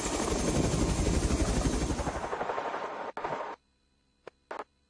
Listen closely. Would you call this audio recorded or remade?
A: recorded